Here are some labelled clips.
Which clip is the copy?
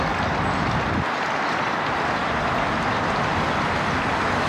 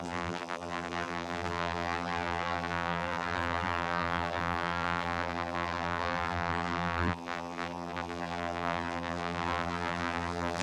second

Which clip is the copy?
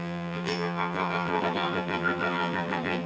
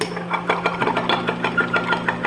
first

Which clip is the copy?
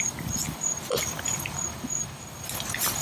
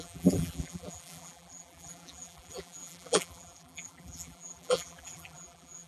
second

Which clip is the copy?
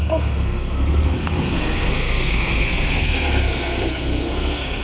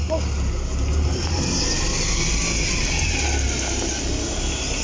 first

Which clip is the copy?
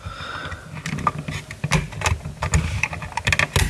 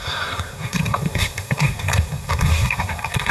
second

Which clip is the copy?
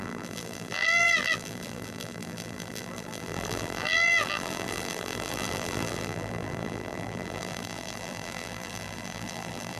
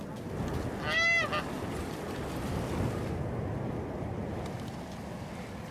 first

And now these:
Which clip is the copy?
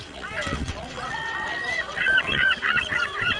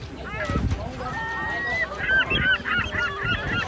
first